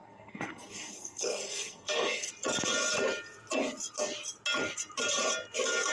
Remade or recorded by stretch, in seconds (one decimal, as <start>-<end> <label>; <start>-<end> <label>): 0.0-2.3 remade; 2.3-5.9 recorded